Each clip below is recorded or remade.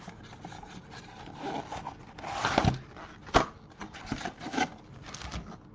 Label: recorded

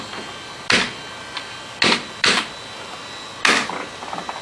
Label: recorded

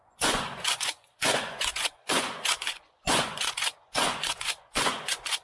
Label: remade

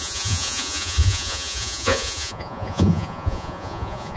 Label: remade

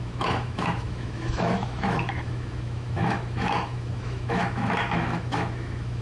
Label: remade